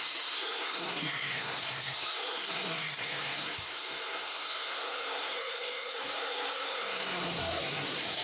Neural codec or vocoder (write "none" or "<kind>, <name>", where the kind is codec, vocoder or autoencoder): codec, SNAC